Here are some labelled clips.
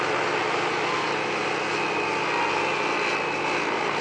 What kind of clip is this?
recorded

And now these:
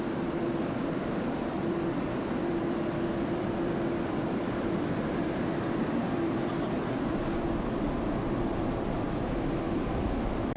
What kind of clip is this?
remade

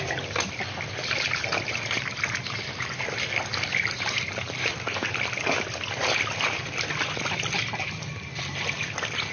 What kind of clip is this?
recorded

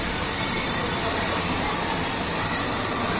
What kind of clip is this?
remade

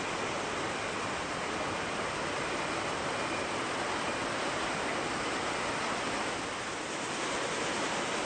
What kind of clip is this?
recorded